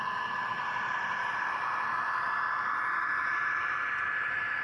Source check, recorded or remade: recorded